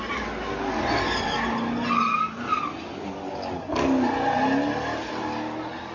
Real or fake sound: real